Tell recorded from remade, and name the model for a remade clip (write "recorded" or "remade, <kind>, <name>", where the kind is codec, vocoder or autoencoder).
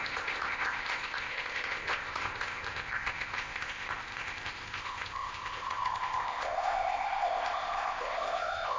remade, codec, ZipCodec